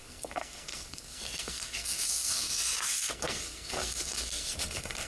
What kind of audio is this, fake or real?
fake